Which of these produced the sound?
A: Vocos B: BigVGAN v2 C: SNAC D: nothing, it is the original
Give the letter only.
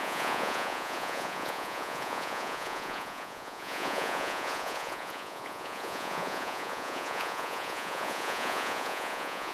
A